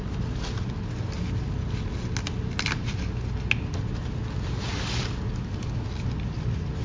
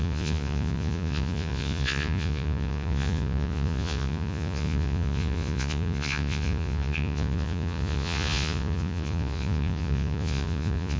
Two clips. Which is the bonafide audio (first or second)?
first